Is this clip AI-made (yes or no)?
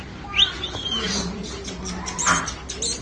no